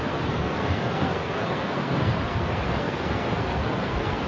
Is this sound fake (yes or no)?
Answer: yes